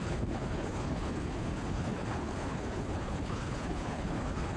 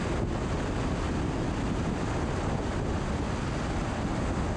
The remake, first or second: first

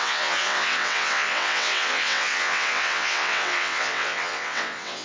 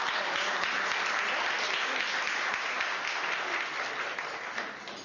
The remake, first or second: first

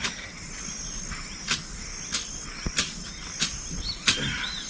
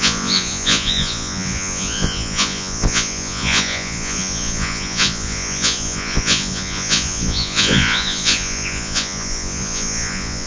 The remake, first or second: second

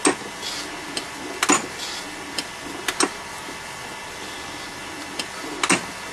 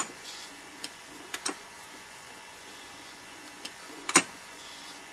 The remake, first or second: second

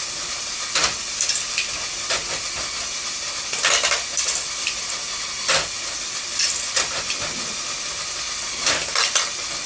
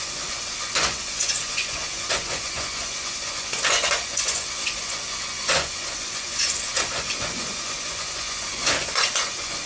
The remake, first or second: second